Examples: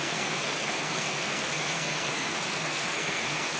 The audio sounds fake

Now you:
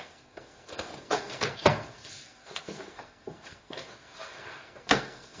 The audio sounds fake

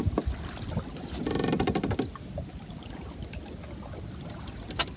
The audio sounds real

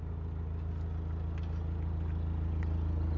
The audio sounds real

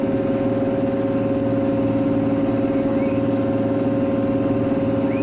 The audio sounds real